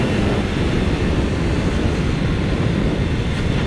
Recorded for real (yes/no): yes